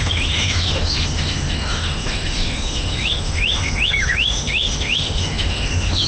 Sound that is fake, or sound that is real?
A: fake